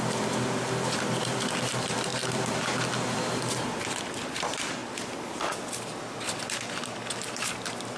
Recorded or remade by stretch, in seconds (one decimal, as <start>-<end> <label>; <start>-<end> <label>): 0.0-8.0 recorded